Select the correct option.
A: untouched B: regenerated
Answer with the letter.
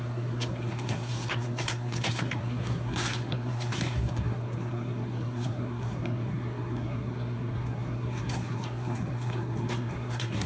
B